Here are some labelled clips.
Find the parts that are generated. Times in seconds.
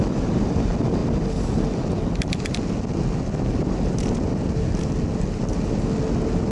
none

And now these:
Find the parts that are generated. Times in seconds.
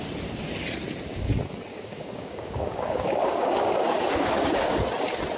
1.7-4.8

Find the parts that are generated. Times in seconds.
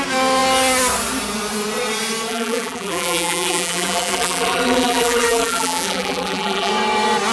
2.3-6.7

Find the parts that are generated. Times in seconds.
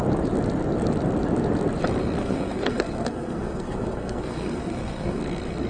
2.2-5.2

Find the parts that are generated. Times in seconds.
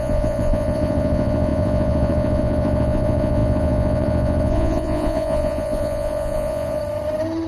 0.0-6.8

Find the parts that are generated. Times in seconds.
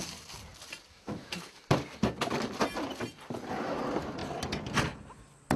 0.9-1.6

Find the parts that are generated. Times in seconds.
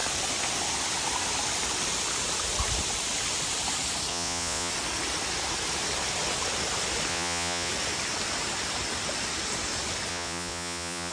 4.1-4.7; 7.1-7.7; 10.1-11.1